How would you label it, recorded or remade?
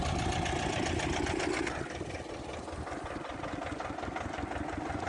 recorded